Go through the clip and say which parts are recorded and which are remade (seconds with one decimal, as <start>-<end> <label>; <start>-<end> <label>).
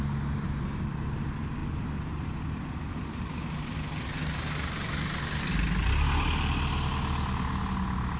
0.0-8.2 recorded